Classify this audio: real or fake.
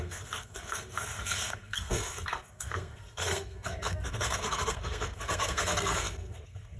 fake